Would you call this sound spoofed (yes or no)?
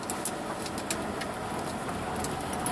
no